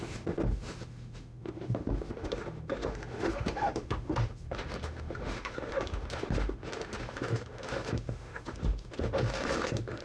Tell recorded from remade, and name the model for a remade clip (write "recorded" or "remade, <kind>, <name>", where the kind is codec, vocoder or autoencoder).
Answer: remade, autoencoder, DAC-VAE